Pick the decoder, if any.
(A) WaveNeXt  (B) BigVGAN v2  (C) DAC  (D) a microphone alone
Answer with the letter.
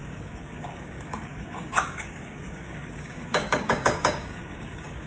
C